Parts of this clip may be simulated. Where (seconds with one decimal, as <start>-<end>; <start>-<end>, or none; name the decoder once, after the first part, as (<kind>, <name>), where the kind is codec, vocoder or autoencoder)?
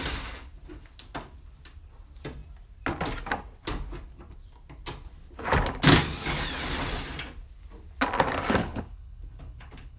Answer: 8.6-10.0 (codec, HILCodec)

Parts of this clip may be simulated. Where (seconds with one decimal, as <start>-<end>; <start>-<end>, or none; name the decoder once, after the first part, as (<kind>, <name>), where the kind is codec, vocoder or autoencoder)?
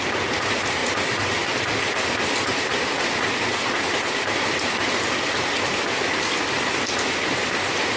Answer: none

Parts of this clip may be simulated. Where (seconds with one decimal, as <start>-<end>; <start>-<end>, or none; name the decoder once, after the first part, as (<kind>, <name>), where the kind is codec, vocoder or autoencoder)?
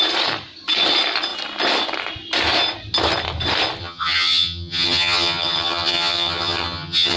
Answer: 3.8-7.2 (vocoder, HiFi-GAN)